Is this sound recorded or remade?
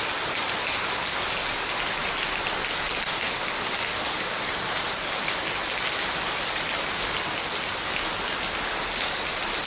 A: recorded